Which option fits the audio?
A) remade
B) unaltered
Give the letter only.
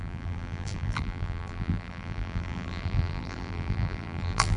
A